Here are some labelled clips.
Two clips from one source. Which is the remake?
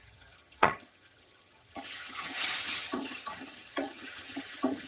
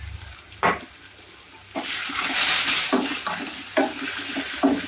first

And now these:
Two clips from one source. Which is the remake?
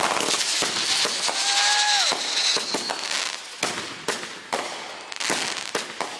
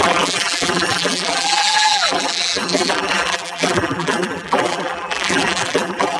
second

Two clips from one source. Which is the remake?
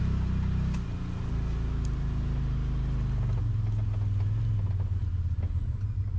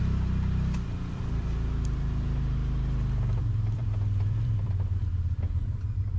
second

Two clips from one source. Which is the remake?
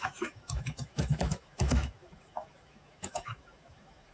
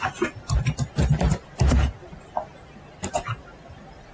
first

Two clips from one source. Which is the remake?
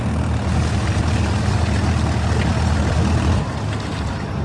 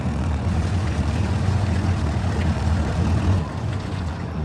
second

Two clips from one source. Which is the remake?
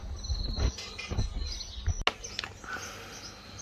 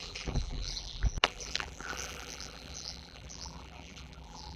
second